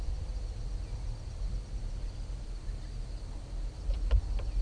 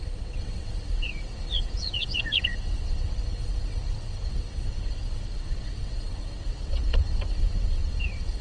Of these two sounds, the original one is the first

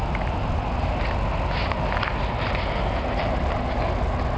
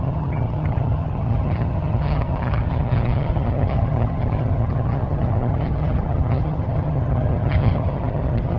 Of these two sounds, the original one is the first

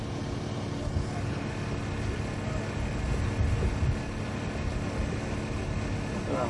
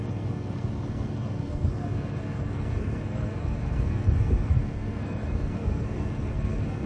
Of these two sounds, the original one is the first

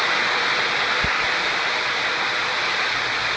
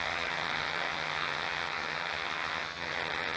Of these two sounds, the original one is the first